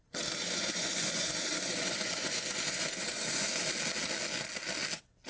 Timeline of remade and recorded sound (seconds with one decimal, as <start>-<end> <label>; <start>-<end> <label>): 0.0-0.4 recorded; 0.4-3.6 remade; 3.6-5.3 recorded